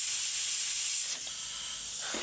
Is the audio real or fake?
real